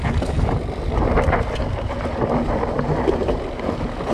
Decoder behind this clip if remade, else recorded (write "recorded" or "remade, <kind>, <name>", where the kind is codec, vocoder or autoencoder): recorded